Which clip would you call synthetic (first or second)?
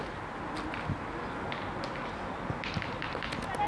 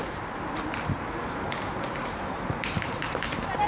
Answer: second